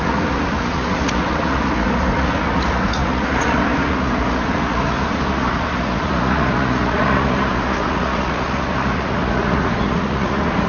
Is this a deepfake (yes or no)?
yes